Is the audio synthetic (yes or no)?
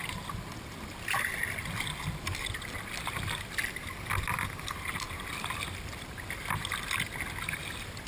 no